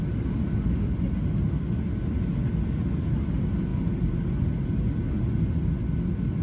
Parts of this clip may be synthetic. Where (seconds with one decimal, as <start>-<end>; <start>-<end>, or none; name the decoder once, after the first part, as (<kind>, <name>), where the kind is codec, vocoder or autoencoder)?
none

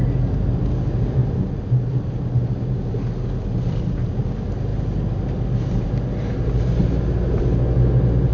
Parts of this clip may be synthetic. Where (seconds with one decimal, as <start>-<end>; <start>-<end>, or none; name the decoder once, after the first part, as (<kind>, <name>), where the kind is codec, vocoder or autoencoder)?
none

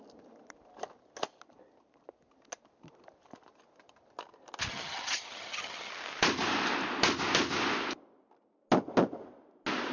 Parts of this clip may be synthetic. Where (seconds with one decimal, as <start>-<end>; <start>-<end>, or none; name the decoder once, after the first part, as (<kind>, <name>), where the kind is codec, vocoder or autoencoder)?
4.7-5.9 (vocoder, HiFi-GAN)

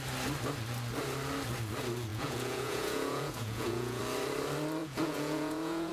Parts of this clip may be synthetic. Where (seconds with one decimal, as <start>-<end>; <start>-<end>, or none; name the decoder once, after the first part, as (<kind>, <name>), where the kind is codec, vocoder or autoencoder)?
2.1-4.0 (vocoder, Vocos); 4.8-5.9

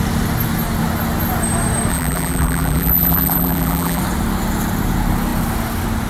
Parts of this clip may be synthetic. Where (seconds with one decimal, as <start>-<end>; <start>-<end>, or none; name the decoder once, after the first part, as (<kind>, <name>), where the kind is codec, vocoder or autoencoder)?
1.9-4.0 (vocoder, BigVGAN v2)

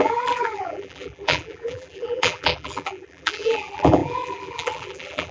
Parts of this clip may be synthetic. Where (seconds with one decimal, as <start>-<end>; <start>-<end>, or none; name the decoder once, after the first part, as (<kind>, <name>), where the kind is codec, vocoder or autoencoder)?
0.0-5.3 (vocoder, BigVGAN v2)

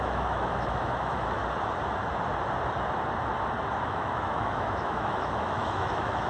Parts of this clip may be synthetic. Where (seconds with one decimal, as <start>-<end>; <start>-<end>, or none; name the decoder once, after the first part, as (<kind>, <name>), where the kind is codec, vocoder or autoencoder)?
0.0-1.4 (autoencoder, DAC-VAE); 3.8-6.3